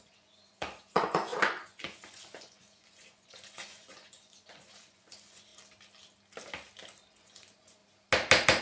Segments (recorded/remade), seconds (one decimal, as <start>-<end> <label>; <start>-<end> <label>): 0.0-5.5 remade; 5.5-7.1 recorded; 7.1-7.8 remade; 7.8-8.6 recorded